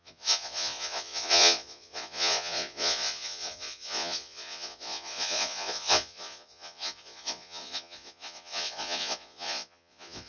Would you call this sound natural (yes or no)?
no